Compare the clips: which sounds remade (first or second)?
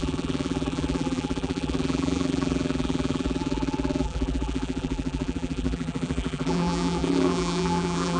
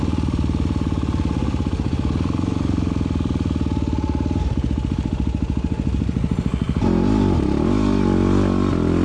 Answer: first